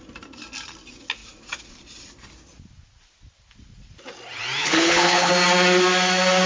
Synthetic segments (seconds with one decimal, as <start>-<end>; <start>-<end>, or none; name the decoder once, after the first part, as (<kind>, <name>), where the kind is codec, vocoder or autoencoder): 4.6-5.3 (codec, HILCodec)